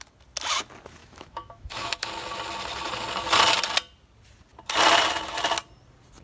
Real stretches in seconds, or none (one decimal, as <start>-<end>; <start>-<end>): 0.0-1.0; 2.1-6.2

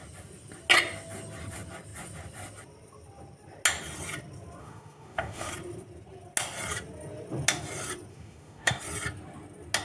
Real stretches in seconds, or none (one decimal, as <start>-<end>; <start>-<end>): 0.0-4.6; 5.5-8.1; 8.8-9.8

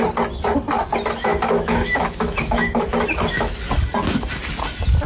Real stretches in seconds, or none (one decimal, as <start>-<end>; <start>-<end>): 0.0-1.3; 3.5-5.1

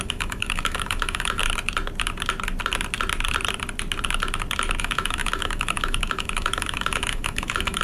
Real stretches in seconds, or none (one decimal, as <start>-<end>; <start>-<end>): 1.4-4.8

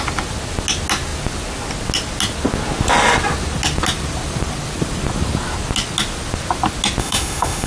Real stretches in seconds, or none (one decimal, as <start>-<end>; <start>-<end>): 0.0-7.0

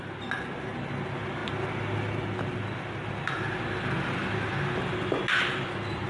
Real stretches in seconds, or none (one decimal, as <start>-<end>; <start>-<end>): 0.0-6.1